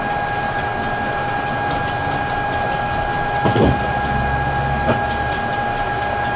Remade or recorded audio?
recorded